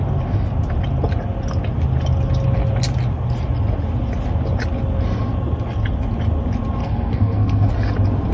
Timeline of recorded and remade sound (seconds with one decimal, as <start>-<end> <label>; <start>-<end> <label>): 0.0-6.8 recorded; 6.8-7.7 remade; 7.7-8.3 recorded